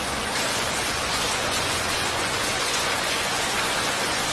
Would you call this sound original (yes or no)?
no